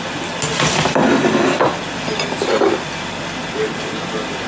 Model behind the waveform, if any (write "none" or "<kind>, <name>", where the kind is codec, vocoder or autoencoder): none